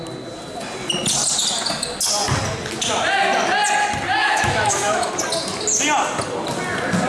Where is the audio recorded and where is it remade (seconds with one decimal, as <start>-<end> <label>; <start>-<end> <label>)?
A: 0.0-4.2 recorded; 4.2-5.1 remade; 5.1-7.1 recorded